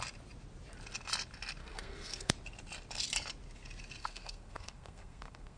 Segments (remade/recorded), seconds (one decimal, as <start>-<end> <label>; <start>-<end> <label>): 0.0-1.6 recorded; 1.6-2.3 remade; 2.3-4.0 recorded; 4.0-5.6 remade